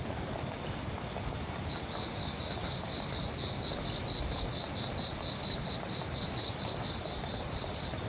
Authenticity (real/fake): real